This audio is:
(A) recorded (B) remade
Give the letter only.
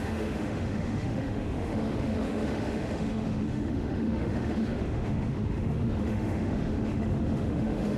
B